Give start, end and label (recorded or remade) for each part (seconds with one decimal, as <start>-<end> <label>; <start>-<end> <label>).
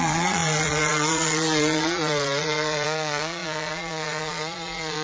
0.0-5.0 remade